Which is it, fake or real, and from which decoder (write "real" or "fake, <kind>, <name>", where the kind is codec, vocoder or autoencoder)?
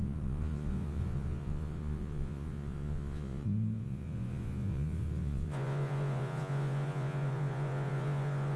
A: fake, vocoder, Vocos